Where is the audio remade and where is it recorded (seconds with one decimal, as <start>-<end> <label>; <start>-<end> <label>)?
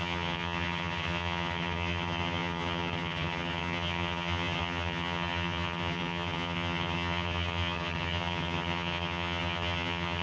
0.0-10.2 remade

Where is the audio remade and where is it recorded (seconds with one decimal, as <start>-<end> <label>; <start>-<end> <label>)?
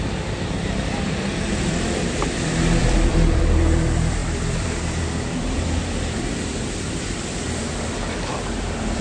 0.0-9.0 remade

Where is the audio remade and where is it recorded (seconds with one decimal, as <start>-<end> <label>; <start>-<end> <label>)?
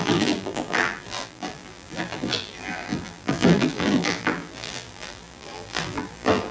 0.0-6.5 remade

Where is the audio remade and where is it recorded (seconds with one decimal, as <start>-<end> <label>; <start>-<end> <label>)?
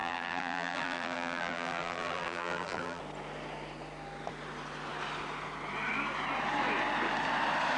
0.0-3.0 remade; 3.0-7.8 recorded